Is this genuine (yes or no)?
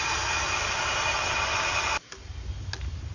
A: yes